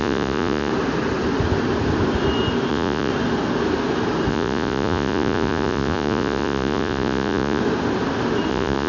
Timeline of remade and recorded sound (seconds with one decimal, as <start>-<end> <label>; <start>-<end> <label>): 0.0-0.7 remade; 0.7-2.7 recorded; 2.7-3.1 remade; 3.1-4.3 recorded; 4.3-7.6 remade; 7.6-8.5 recorded; 8.5-8.9 remade